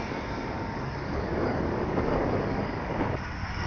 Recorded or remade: remade